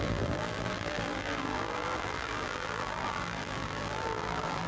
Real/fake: fake